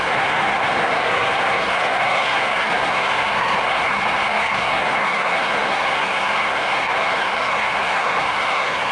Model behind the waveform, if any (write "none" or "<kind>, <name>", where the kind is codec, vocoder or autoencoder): codec, SNAC